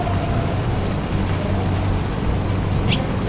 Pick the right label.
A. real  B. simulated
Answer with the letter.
A